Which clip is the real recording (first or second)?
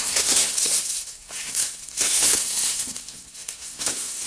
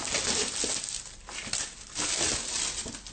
second